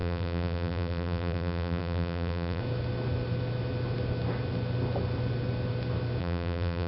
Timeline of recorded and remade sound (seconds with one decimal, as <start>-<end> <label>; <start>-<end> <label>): 0.0-2.6 remade; 2.6-6.2 recorded; 6.2-6.9 remade